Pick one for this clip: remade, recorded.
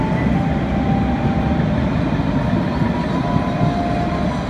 recorded